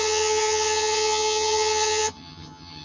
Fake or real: fake